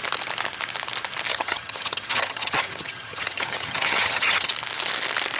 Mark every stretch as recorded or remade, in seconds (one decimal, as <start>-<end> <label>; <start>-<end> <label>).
0.0-1.3 recorded; 1.3-4.5 remade; 4.5-5.4 recorded